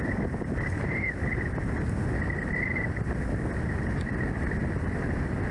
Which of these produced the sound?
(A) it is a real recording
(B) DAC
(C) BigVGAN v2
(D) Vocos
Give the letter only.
A